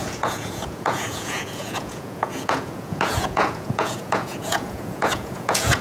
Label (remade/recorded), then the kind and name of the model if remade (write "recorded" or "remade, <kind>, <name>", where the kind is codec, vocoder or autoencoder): remade, vocoder, Vocos